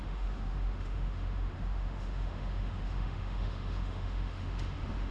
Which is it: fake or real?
fake